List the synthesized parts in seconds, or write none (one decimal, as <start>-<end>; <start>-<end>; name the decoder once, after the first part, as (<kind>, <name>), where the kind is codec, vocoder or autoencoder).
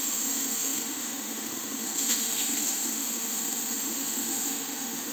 0.0-5.1 (autoencoder, DAC-VAE)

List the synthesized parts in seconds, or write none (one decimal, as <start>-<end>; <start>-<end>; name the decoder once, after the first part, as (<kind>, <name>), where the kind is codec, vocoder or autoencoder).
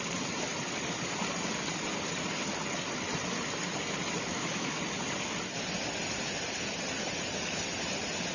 4.3-4.8 (autoencoder, DAC-VAE)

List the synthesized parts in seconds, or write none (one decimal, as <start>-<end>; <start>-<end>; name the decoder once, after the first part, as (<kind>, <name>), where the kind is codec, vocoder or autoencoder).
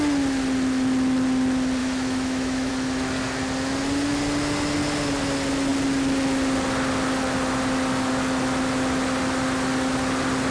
1.8-2.7 (autoencoder, DAC-VAE)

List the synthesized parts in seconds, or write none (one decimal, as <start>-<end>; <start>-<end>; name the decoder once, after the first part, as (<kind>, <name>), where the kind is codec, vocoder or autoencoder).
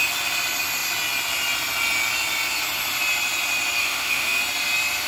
3.8-4.4 (autoencoder, DAC-VAE)